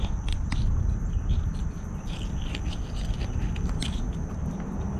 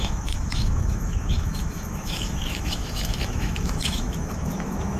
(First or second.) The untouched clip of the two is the first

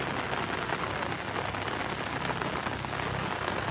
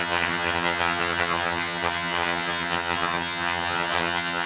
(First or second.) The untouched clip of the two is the first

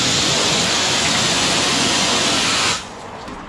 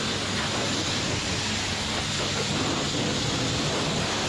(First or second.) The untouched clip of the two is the second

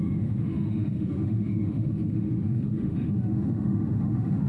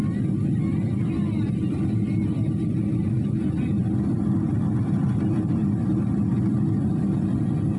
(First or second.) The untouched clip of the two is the second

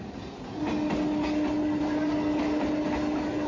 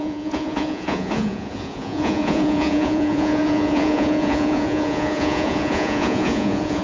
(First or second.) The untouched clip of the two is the first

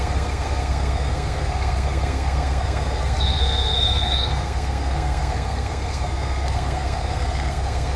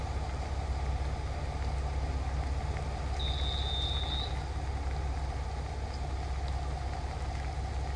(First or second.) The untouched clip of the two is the second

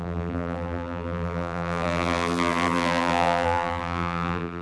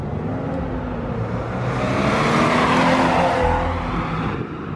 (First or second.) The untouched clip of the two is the second